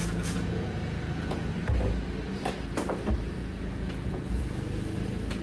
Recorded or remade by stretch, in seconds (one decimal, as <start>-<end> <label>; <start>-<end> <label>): 0.0-1.5 remade; 1.5-3.4 recorded; 3.4-4.4 remade; 4.4-5.4 recorded